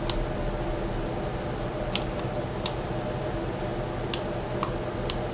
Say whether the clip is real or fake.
real